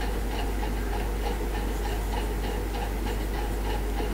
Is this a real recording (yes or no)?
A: yes